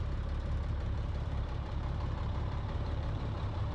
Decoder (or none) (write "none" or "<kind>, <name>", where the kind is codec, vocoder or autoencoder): vocoder, BigVGAN v2